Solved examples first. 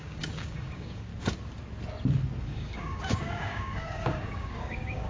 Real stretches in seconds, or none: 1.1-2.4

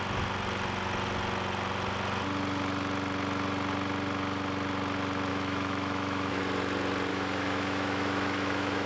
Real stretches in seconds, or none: 0.0-5.3; 6.4-7.1

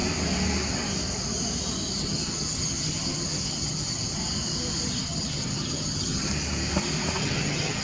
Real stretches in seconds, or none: 0.0-2.0; 4.2-5.0; 6.3-7.2

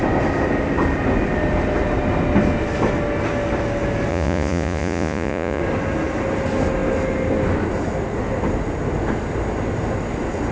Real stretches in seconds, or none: 0.0-4.1; 5.6-10.5